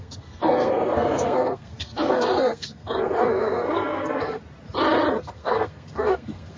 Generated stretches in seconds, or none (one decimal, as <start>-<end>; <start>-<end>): 0.0-4.4; 5.1-6.6